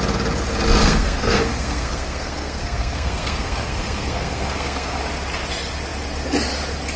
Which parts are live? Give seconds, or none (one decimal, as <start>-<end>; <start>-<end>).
0.0-0.8; 5.0-7.0